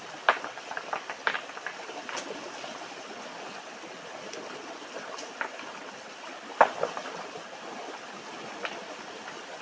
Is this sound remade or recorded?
recorded